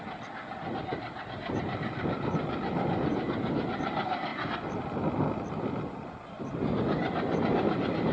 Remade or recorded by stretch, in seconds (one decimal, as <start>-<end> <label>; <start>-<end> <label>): 0.0-8.1 recorded

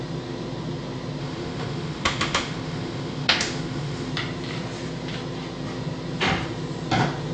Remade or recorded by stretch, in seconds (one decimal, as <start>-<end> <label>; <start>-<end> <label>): 0.0-1.2 recorded; 1.2-4.1 remade; 4.1-7.3 recorded

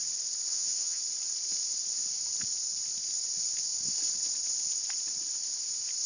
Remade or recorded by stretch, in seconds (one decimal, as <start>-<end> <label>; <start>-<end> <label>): 0.0-0.5 recorded; 0.5-1.0 remade; 1.0-6.1 recorded

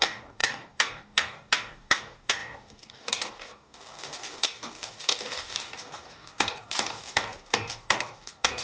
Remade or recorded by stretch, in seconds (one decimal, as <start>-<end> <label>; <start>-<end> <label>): 0.0-8.6 remade